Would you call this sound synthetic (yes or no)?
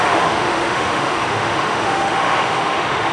yes